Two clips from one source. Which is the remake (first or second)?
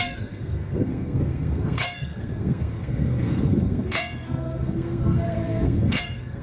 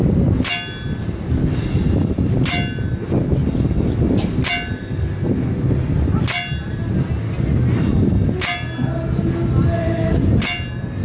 first